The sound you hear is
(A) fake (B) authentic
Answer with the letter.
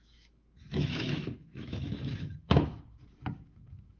A